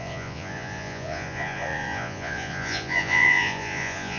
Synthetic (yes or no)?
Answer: yes